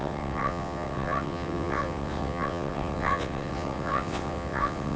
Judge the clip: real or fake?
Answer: fake